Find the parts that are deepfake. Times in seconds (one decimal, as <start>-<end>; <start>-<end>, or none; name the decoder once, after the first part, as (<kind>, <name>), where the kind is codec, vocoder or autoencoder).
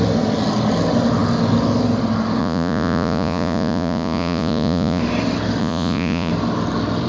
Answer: 2.4-5.0 (vocoder, Vocos); 5.6-6.3